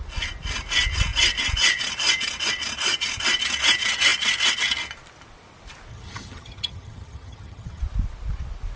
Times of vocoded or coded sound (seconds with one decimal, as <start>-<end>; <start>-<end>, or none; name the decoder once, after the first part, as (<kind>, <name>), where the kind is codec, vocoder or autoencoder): 5.9-7.8 (vocoder, HiFi-GAN)